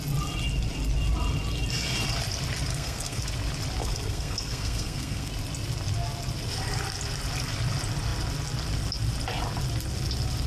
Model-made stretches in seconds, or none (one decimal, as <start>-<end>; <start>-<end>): 2.7-3.2; 3.8-5.3